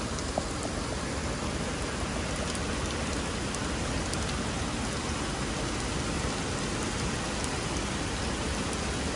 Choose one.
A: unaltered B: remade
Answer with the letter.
A